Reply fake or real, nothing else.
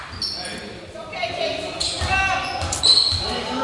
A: fake